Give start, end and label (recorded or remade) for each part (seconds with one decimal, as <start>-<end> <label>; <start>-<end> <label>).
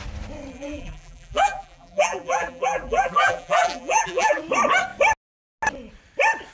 0.0-0.5 recorded; 0.5-4.4 remade; 4.4-6.5 recorded